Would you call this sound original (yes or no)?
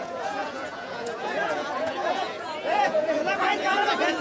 no